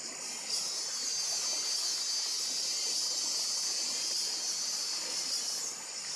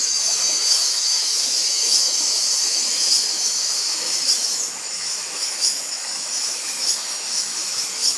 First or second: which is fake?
second